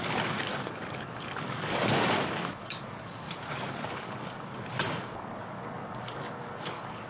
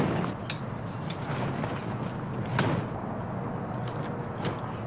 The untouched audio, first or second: second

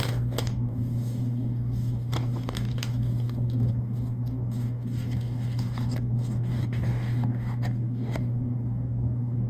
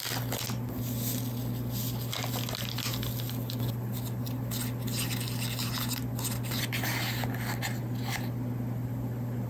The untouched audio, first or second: second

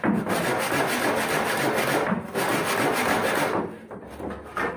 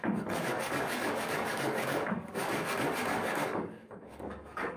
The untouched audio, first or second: first